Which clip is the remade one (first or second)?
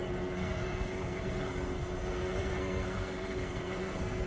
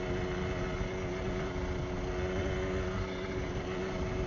first